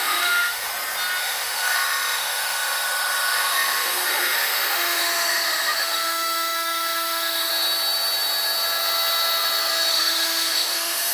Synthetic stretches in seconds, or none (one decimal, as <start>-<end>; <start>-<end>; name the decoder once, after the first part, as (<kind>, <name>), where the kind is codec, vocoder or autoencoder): 0.0-0.7 (autoencoder, DAC-VAE); 1.2-7.5; 9.9-11.1